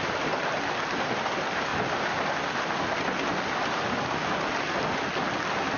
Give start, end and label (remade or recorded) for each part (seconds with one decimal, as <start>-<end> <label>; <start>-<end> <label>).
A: 0.0-5.8 recorded